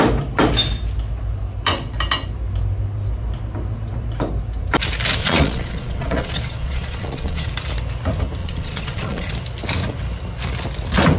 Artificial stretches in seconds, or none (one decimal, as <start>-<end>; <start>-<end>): 5.2-7.5; 8.4-9.3